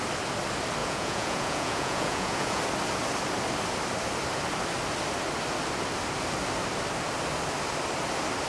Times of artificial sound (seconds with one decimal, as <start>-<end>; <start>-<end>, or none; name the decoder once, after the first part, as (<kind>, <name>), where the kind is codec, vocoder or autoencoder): 0.8-2.6 (vocoder, Vocos)